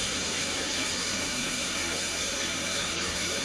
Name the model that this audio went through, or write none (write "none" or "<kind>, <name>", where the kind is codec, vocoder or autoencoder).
codec, SNAC